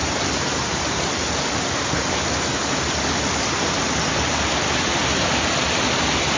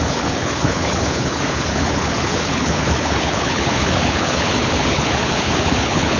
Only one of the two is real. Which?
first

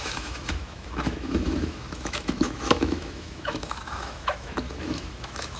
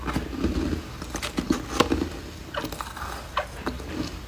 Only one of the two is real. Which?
second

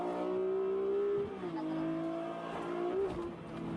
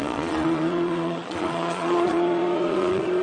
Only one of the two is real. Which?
first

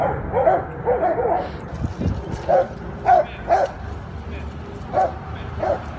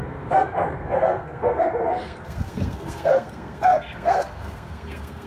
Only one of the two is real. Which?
first